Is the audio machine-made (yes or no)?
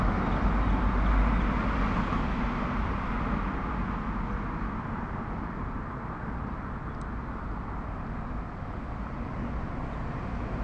no